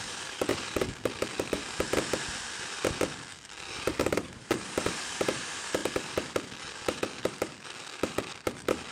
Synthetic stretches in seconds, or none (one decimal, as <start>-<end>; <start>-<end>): 0.0-1.6; 3.3-8.9